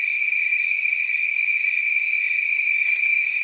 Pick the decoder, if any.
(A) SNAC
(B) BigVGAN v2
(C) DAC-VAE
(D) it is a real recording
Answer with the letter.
D